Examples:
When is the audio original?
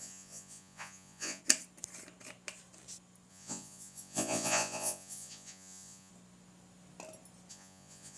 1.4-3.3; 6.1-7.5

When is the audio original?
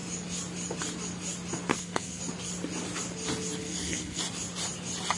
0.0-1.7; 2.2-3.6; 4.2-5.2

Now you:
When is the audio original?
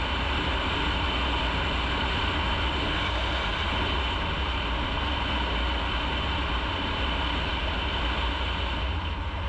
0.0-9.5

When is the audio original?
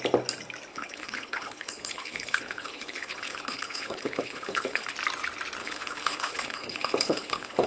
0.0-0.7; 4.9-5.6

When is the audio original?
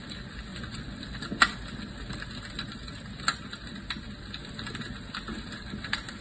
0.0-0.5; 1.0-6.2